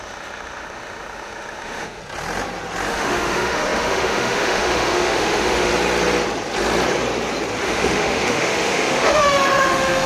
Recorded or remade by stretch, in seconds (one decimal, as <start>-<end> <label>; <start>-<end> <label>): 0.0-2.0 remade; 2.0-2.9 recorded; 2.9-5.7 remade; 5.7-7.6 recorded; 7.6-10.1 remade